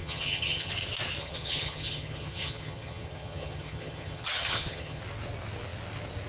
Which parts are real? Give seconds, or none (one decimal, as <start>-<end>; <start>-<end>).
0.7-1.2; 5.0-6.3